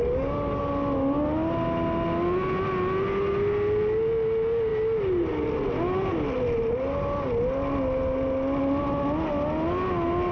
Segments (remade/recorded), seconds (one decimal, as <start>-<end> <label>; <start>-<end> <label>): 0.0-0.6 remade; 0.6-10.3 recorded